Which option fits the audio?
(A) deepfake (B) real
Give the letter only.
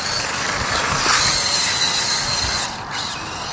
B